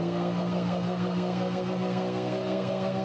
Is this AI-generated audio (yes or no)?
yes